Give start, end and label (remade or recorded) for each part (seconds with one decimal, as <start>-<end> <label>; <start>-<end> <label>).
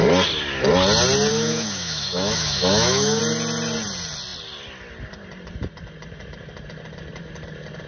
0.0-1.3 recorded; 1.3-3.2 remade; 3.2-7.9 recorded